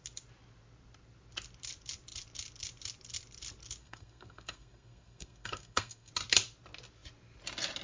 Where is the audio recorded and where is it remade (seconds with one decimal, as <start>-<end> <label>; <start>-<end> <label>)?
0.0-3.8 recorded; 3.8-6.1 remade; 6.1-7.8 recorded